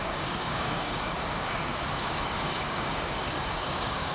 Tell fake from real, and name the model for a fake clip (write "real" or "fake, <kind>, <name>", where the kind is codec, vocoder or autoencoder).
fake, codec, DAC